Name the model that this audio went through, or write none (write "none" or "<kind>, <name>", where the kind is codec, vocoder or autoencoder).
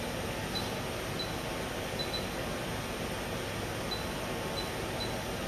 none